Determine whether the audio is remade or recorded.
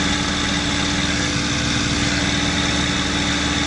recorded